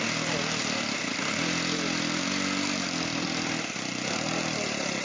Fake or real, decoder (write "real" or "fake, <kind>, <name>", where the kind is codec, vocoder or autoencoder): fake, vocoder, BigVGAN v2